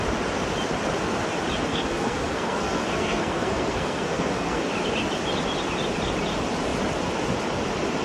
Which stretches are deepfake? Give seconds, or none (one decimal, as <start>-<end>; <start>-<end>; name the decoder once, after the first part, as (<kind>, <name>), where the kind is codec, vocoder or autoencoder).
1.7-4.7 (codec, SNAC)